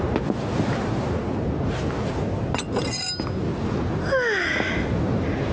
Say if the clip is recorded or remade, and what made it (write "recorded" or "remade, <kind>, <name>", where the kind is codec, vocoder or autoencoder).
recorded